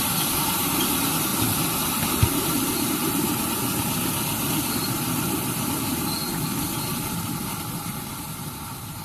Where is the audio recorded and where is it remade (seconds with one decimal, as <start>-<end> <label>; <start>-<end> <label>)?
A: 0.0-1.3 remade; 1.3-2.1 recorded; 2.1-3.6 remade; 3.6-4.5 recorded; 4.5-9.0 remade